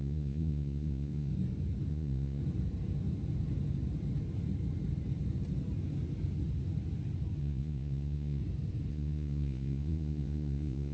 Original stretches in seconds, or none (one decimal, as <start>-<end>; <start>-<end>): 1.3-1.9; 2.4-7.4; 8.4-8.9